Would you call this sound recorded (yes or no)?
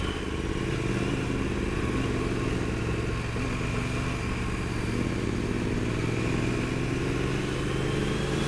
yes